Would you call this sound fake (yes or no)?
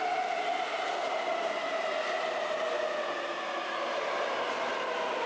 no